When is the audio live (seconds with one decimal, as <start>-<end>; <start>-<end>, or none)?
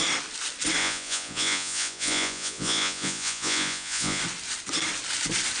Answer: 0.0-0.8; 4.2-5.6